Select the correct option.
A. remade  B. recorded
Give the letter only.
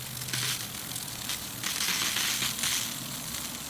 B